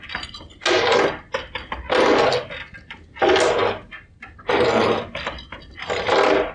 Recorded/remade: recorded